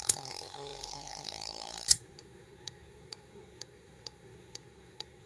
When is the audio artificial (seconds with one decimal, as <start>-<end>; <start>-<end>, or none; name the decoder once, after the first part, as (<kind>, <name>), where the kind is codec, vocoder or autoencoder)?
0.0-5.3 (codec, SNAC)